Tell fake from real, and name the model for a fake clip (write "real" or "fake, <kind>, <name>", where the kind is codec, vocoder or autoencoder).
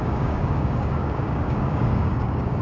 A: fake, codec, DAC